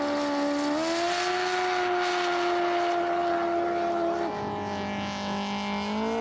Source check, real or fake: real